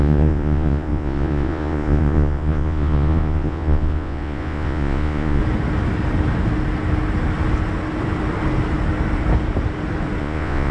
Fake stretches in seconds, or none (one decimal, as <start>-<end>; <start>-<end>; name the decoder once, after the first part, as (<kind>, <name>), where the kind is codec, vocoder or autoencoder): 0.0-5.4 (vocoder, Vocos); 10.2-10.7